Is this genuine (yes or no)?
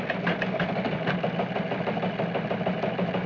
yes